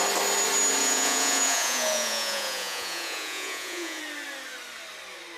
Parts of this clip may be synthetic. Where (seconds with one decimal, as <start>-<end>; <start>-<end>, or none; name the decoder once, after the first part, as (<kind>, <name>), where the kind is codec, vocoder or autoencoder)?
0.8-4.0 (vocoder, Vocos)